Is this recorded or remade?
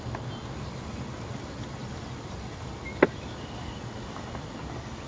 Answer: recorded